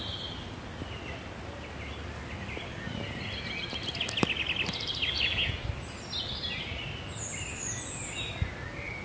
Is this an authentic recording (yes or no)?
yes